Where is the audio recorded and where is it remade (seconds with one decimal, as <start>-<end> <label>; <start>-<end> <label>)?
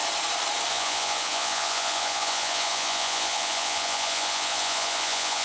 0.0-0.7 recorded; 0.7-5.4 remade